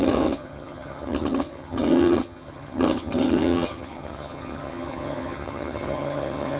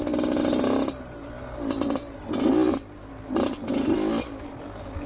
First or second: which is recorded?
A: second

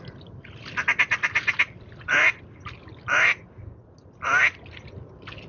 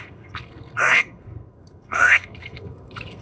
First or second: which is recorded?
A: first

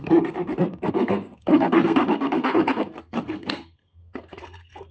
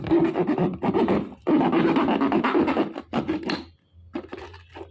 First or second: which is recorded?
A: second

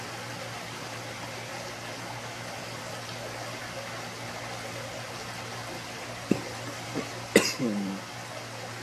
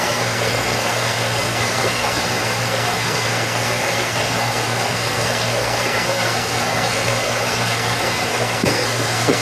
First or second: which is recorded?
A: first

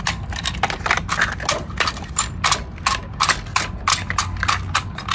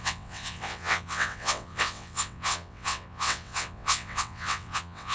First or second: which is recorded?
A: first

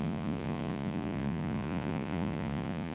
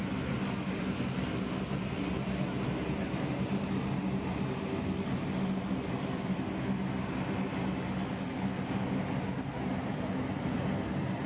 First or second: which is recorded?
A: second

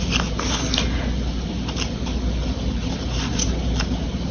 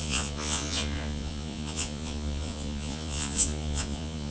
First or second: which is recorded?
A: first